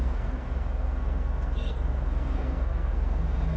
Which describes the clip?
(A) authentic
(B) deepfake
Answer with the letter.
B